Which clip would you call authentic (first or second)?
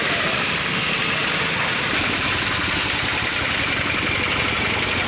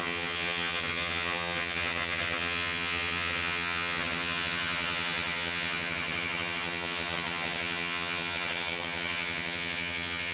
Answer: first